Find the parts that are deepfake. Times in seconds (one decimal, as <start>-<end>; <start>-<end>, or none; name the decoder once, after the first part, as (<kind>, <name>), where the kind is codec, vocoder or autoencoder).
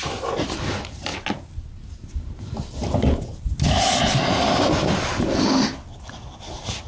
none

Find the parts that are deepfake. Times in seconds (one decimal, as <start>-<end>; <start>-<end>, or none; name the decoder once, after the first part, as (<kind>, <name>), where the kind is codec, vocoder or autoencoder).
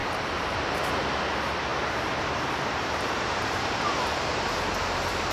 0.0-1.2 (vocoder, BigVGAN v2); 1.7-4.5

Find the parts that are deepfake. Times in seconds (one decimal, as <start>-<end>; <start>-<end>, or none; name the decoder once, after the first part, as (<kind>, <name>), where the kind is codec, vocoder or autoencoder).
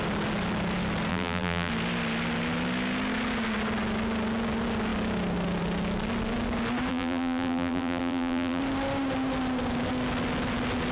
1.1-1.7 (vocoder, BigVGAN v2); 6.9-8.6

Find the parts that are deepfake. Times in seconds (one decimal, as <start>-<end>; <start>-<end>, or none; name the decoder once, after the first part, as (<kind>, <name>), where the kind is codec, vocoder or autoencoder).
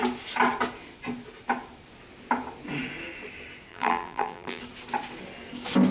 3.7-4.6 (vocoder, BigVGAN v2)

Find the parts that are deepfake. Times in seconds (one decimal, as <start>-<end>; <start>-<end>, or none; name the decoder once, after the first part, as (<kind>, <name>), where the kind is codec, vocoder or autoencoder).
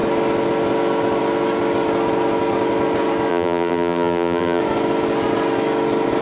3.3-4.6 (vocoder, BigVGAN v2)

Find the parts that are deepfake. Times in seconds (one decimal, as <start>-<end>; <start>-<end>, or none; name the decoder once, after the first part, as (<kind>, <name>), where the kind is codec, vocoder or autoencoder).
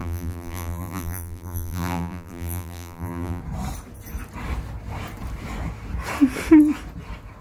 0.0-3.4 (vocoder, BigVGAN v2)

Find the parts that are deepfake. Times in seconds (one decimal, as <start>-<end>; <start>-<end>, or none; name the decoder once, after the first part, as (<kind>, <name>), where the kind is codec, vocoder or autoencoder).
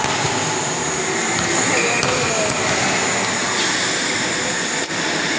none